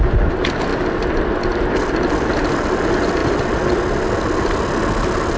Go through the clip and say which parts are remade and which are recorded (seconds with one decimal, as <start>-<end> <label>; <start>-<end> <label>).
0.0-5.4 recorded